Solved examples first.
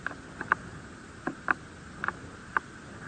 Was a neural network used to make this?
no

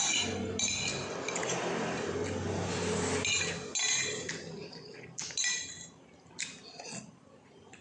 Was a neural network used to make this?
no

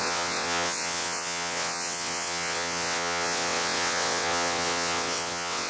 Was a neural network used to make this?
yes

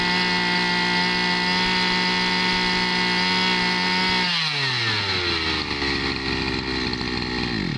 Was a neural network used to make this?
no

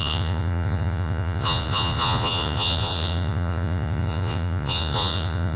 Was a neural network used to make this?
yes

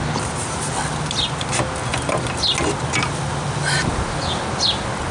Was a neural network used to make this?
no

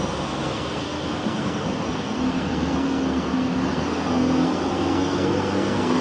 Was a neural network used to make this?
yes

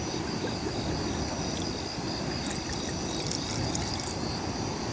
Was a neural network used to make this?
no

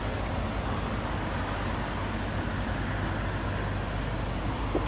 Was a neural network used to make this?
no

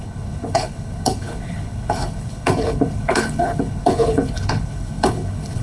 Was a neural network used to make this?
yes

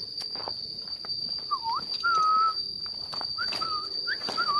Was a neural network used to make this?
no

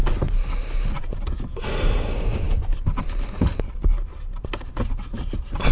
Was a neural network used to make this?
no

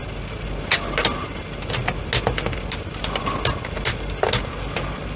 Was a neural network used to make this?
no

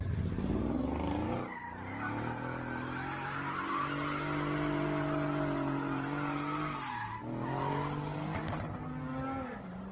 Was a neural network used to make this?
no